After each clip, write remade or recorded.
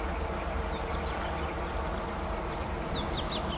recorded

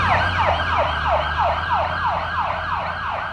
remade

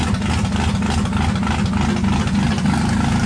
recorded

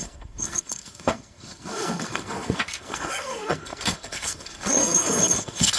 remade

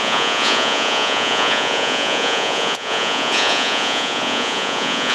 remade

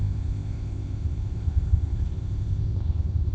remade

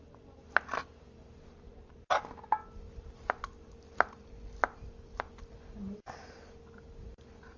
recorded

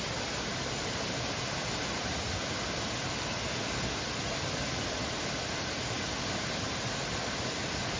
recorded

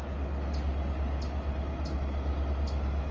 recorded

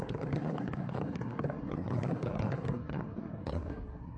remade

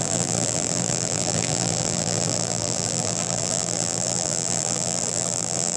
remade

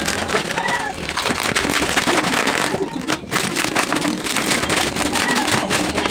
recorded